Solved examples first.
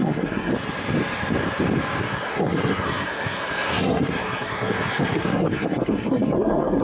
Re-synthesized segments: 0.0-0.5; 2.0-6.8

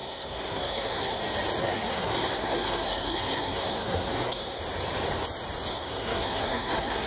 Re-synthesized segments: 0.0-1.2; 1.6-4.6; 5.7-7.1

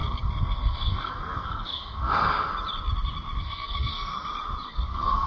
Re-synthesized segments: 0.0-2.5; 3.4-4.1; 4.7-5.3

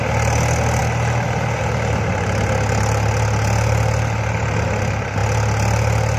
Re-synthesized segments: none

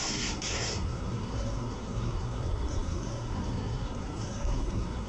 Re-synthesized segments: 0.0-5.1